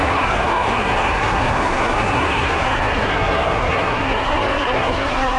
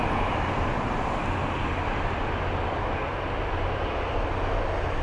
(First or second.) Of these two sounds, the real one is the second